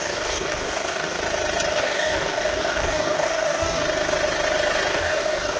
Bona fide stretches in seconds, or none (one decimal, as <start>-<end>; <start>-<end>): 1.2-1.7; 3.8-4.9